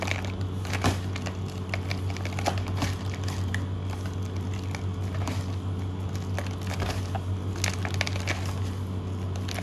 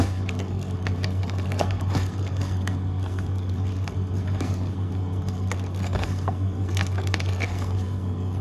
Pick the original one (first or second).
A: first